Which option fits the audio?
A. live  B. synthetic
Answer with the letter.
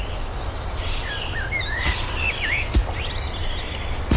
A